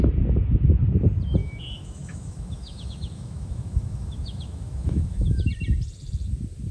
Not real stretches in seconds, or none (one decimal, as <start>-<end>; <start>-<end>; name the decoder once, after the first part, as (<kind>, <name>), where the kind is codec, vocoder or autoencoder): 1.4-5.4 (autoencoder, DAC-VAE)